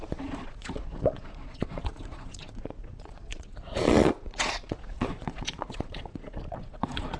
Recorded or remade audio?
remade